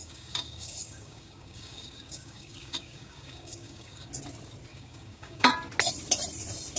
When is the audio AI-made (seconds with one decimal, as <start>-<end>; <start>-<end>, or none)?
0.0-4.1; 4.7-5.5